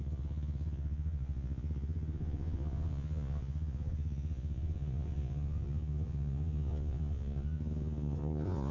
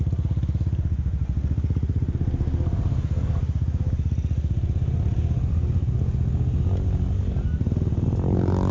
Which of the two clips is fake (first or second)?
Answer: first